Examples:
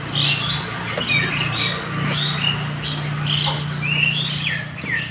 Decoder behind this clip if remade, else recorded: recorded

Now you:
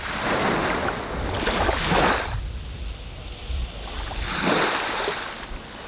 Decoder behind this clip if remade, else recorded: recorded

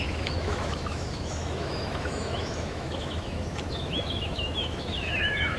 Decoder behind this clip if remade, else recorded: remade, autoencoder, DAC-VAE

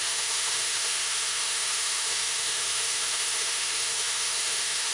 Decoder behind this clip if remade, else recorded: remade, autoencoder, DAC-VAE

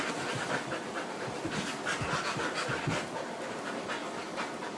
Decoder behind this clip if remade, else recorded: recorded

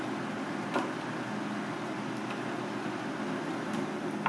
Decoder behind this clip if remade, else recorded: recorded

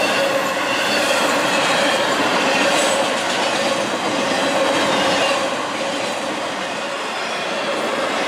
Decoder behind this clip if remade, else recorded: recorded